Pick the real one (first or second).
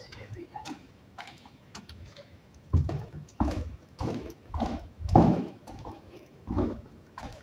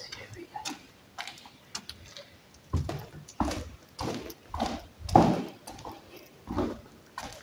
second